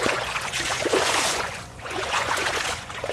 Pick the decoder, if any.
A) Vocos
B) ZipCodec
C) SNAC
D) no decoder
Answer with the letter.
A